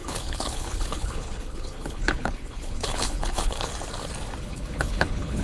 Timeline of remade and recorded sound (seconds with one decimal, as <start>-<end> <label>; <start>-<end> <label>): 0.0-3.7 remade; 3.7-4.4 recorded; 4.4-5.4 remade